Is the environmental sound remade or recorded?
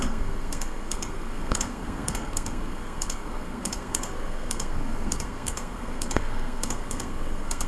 remade